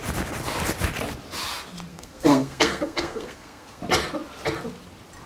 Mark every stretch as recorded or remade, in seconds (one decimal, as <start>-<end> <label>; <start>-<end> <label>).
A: 0.0-1.9 recorded; 1.9-3.8 remade; 3.8-5.3 recorded